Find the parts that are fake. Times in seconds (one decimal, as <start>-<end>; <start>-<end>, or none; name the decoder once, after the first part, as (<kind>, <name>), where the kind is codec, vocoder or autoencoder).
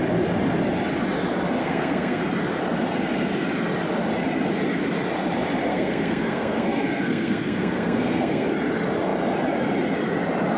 1.6-2.2 (codec, SNAC); 5.7-8.5